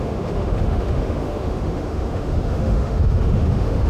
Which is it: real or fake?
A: fake